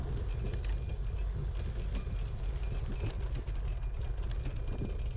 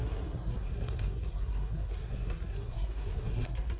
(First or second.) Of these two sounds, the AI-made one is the second